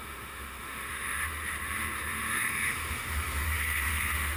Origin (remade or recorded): remade